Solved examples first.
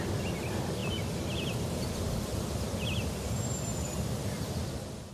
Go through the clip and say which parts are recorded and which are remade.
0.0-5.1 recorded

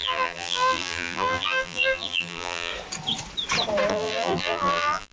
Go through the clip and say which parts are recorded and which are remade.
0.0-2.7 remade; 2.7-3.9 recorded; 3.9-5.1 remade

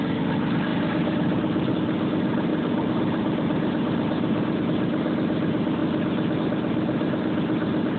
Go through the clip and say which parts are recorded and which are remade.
0.0-0.7 recorded; 0.7-1.7 remade; 1.7-2.5 recorded; 2.5-4.6 remade; 4.6-8.0 recorded